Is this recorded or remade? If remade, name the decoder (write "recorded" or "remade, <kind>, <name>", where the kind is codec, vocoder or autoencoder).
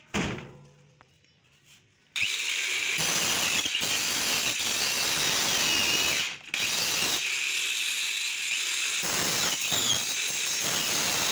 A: recorded